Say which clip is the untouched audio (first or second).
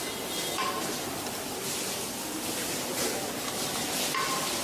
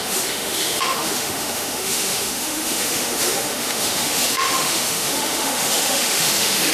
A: first